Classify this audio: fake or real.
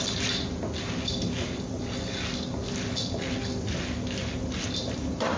real